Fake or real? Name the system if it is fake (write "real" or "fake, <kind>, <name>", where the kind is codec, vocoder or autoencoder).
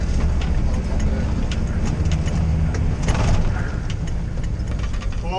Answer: real